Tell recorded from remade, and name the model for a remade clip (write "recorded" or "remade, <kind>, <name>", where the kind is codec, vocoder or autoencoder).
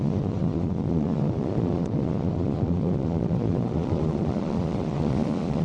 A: remade, vocoder, Vocos